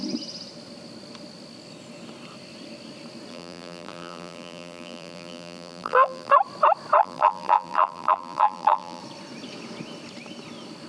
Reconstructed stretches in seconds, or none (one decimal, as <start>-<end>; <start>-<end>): 3.3-6.3; 7.0-9.0